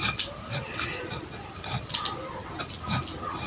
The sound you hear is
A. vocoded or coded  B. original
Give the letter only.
B